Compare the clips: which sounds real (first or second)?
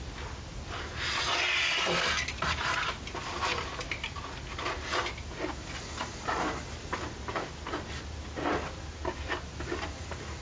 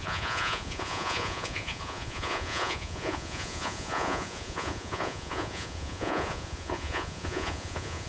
first